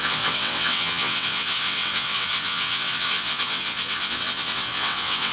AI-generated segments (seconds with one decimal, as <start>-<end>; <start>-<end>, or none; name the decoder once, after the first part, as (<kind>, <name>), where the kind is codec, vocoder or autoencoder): 0.0-5.3 (vocoder, WaveNeXt)